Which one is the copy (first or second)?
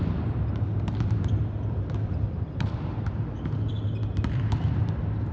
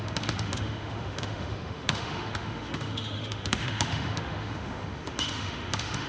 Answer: second